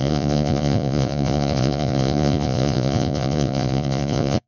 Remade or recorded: remade